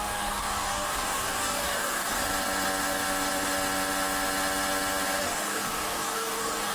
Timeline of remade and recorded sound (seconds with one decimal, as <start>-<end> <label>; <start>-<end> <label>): 0.0-2.1 remade; 2.1-5.2 recorded; 5.2-6.7 remade